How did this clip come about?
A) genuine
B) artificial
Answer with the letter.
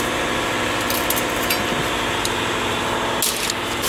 A